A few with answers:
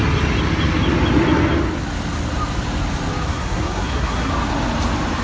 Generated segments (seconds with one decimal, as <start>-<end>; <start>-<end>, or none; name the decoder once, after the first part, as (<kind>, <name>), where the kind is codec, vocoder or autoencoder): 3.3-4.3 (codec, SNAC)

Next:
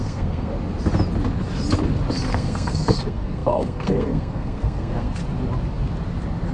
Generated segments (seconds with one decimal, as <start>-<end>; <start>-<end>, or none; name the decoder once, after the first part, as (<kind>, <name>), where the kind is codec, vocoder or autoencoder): 0.0-0.5 (codec, SNAC); 2.3-5.2

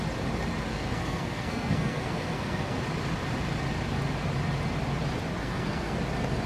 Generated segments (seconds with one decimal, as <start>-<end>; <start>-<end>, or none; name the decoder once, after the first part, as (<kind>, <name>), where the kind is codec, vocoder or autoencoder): 0.7-2.8 (codec, SNAC); 5.4-6.0

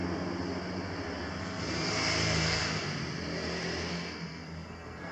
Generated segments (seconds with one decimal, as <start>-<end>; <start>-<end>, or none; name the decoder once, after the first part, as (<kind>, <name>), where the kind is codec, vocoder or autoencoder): 1.4-2.6 (codec, SNAC); 3.9-5.1